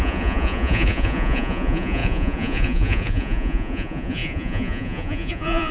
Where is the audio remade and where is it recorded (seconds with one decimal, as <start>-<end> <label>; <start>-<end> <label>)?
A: 0.0-5.7 remade